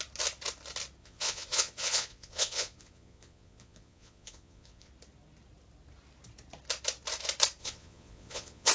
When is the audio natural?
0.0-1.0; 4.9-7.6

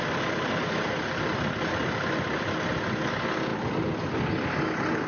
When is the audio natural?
0.0-5.1

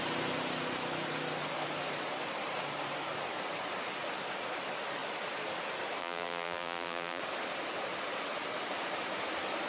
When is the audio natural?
0.0-6.0; 7.2-9.7

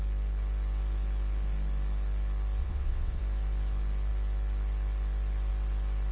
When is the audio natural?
0.0-2.6; 3.2-6.1

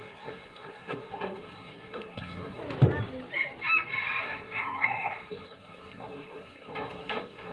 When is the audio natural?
2.6-4.2

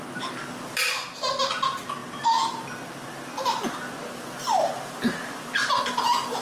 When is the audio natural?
0.0-6.4